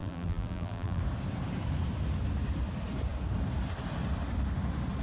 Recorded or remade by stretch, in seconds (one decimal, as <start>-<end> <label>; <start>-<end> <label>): 0.0-1.0 remade; 1.0-5.0 recorded